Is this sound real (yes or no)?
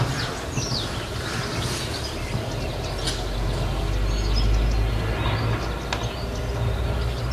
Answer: yes